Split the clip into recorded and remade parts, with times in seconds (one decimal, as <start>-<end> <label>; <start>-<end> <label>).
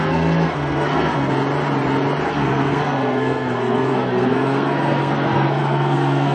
0.0-1.3 remade; 1.3-2.3 recorded; 2.3-6.3 remade